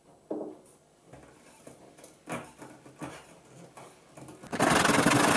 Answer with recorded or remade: recorded